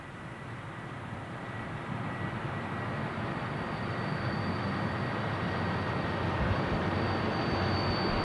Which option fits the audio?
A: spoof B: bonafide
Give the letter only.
A